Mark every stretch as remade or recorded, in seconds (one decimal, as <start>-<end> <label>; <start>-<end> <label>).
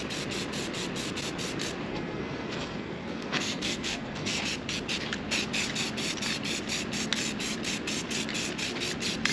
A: 0.0-1.9 recorded; 1.9-4.4 remade; 4.4-9.3 recorded